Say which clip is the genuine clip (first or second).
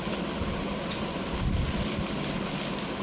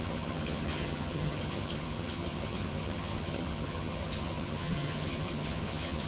first